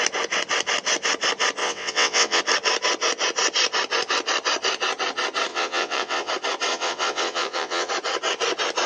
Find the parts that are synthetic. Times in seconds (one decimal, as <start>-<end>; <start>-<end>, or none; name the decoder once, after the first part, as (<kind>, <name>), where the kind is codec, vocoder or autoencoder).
1.6-2.4 (vocoder, WaveNeXt); 5.5-6.3; 6.7-7.9